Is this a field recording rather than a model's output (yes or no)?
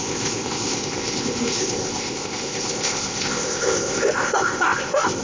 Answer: no